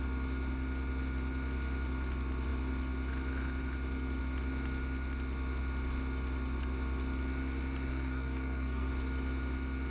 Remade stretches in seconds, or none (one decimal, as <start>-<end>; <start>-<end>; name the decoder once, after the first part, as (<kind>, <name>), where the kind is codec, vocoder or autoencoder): 7.9-8.9 (codec, SNAC)